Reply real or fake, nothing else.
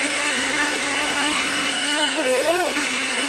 fake